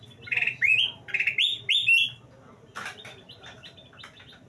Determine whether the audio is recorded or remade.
recorded